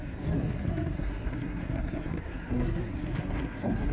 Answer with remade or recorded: remade